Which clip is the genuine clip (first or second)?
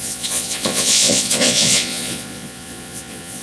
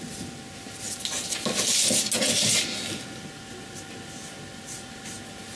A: second